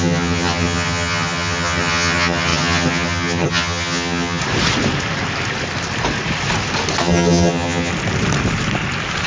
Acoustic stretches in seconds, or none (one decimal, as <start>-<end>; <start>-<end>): 4.4-7.0; 7.9-9.3